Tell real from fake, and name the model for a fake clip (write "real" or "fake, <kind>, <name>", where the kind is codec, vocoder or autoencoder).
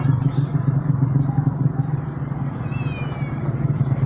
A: real